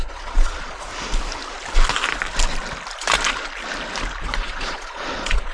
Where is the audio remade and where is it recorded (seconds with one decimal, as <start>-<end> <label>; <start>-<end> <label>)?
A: 0.0-0.9 remade; 0.9-4.2 recorded; 4.2-5.5 remade